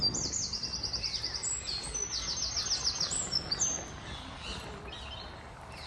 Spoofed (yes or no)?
no